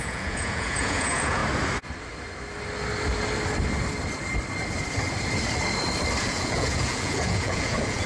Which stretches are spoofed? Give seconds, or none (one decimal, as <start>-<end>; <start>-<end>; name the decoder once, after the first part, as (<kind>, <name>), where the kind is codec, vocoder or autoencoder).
0.0-1.4 (vocoder, Vocos); 6.2-8.1